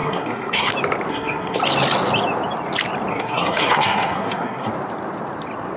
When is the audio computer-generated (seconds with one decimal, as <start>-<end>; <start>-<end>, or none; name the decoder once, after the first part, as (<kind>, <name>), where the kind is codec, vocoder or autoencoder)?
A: 0.0-0.7 (codec, SNAC); 1.1-1.6; 3.1-4.7